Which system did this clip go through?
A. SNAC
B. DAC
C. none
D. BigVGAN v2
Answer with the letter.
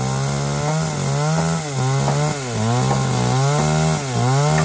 C